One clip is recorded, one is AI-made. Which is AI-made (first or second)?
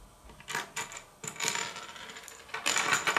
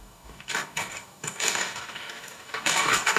second